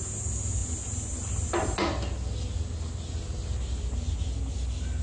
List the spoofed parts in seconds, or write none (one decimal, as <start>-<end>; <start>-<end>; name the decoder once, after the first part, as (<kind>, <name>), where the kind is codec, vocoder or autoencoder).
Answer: none